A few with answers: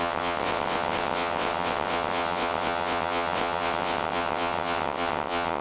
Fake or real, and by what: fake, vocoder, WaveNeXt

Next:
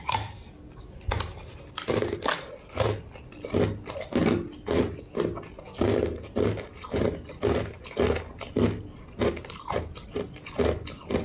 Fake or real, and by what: real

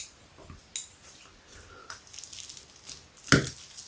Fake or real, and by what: real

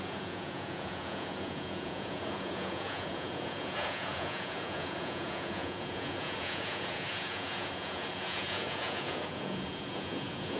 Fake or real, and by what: fake, vocoder, Vocos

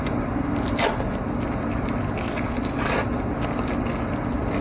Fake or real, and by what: real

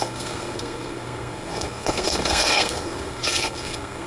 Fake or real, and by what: fake, codec, SNAC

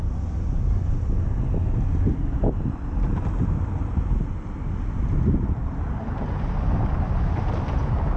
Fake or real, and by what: real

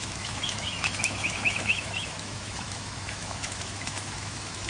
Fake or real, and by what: fake, autoencoder, DAC-VAE